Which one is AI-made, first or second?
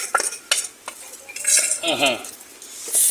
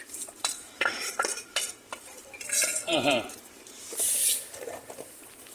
second